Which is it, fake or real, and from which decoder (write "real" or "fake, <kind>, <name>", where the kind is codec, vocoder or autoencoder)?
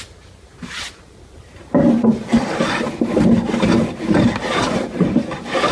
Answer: fake, vocoder, BigVGAN v2